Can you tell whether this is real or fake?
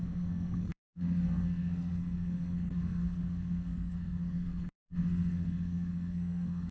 fake